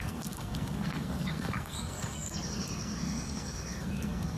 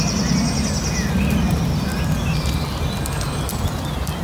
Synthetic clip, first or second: first